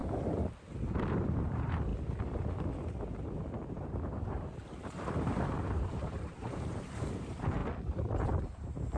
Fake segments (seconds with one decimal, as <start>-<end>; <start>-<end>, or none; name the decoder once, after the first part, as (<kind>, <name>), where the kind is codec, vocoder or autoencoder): 0.9-1.9 (vocoder, BigVGAN v2); 3.7-9.0